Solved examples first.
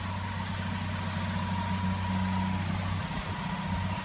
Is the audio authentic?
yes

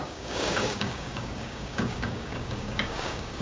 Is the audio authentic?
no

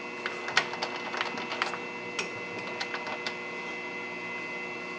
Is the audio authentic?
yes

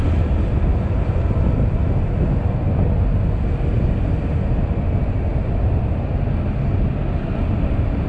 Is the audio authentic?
yes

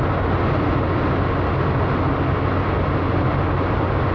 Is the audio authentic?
yes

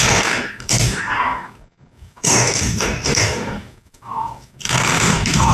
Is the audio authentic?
no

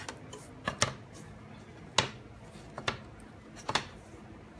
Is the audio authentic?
yes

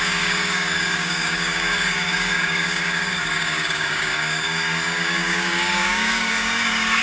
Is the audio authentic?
no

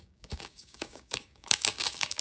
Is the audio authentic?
no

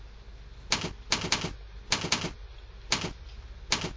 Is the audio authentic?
yes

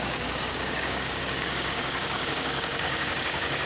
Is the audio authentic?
no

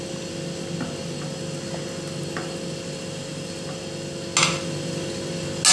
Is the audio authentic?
yes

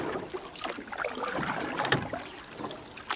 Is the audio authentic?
yes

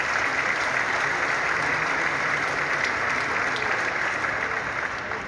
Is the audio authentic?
yes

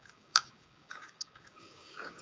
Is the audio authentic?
no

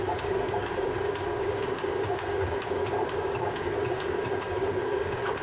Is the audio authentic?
no